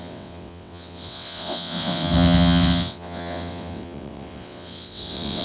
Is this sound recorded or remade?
remade